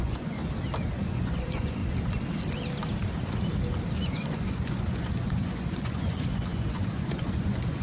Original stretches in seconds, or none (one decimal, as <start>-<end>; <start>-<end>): 0.4-1.1; 1.8-3.9